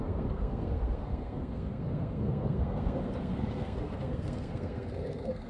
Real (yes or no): no